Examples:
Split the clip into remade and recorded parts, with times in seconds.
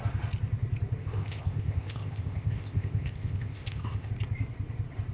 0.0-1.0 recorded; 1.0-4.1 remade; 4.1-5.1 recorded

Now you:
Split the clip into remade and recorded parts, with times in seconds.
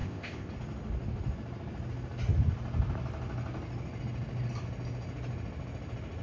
0.0-0.5 remade; 0.5-6.2 recorded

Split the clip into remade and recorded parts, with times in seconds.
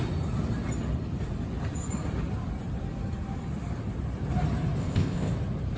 0.0-4.8 recorded; 4.8-5.3 remade; 5.3-5.8 recorded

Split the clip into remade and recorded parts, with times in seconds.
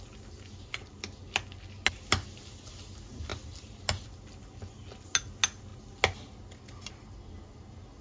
0.0-8.0 recorded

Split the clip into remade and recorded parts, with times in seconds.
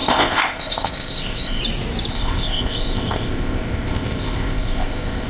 0.0-1.6 remade; 1.6-2.1 recorded; 2.1-5.3 remade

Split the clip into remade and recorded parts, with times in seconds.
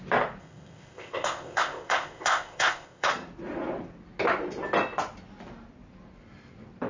0.0-0.4 recorded; 0.4-3.1 remade; 3.1-6.9 recorded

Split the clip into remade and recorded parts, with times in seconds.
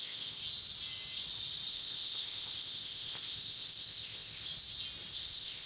0.0-0.4 remade; 0.4-1.7 recorded; 1.7-4.5 remade; 4.5-5.1 recorded; 5.1-5.7 remade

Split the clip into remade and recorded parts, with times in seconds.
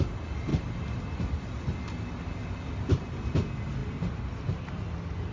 0.0-5.3 recorded